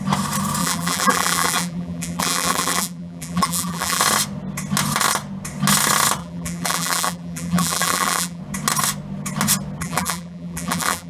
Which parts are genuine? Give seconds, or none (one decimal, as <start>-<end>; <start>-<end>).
0.0-0.6; 4.0-6.2; 8.4-9.8